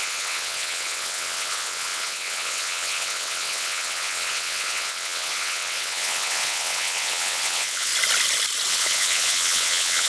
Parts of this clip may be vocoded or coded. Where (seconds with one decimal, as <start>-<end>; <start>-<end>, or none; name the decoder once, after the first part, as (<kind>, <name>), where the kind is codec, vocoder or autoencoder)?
0.0-7.9 (vocoder, WaveNeXt); 8.7-10.1